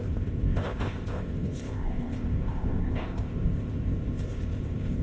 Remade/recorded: remade